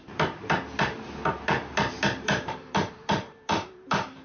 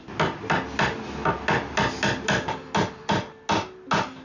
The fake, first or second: first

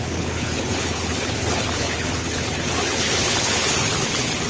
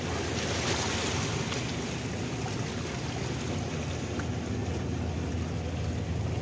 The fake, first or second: first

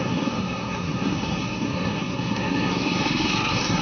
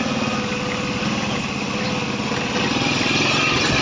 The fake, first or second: first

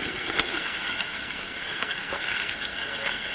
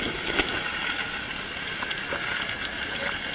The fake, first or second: first